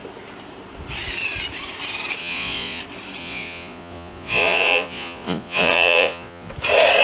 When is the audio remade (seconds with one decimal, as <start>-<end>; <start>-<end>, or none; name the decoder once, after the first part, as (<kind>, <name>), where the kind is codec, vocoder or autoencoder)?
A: 2.2-2.8 (vocoder, Vocos); 3.2-6.5